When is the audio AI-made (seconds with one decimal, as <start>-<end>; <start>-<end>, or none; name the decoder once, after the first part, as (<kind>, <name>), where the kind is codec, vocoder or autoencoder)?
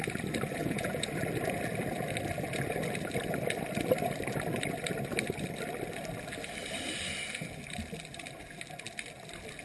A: 0.6-1.1 (vocoder, Vocos)